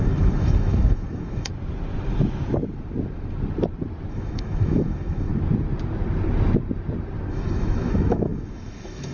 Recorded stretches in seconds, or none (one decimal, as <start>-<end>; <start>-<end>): 1.5-4.1; 5.3-7.3